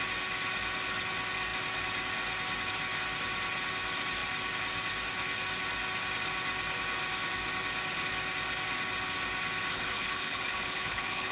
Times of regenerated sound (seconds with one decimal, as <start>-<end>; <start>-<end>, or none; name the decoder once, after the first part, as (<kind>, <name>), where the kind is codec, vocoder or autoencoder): 9.7-11.3 (codec, HILCodec)